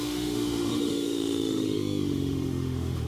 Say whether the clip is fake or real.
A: fake